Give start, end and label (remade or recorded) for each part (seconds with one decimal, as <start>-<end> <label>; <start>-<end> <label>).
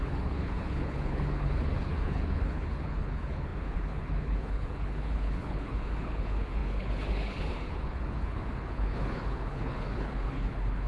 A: 0.0-10.9 remade